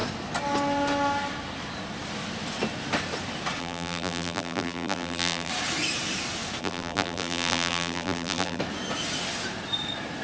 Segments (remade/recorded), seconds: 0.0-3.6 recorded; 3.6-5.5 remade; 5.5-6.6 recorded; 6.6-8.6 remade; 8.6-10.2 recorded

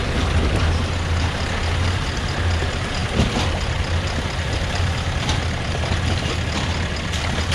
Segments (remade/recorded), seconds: 0.0-7.5 recorded

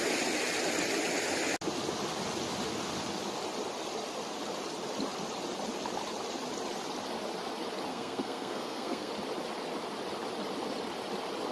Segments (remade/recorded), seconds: 0.0-7.9 recorded; 7.9-9.1 remade; 9.1-11.5 recorded

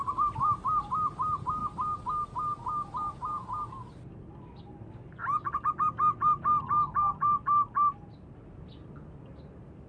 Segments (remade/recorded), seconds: 0.0-9.9 recorded